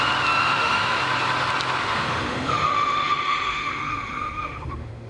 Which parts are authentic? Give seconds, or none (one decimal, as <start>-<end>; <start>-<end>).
0.0-0.4; 1.0-1.8